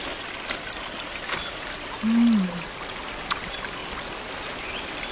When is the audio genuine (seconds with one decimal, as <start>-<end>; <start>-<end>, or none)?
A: 0.0-5.1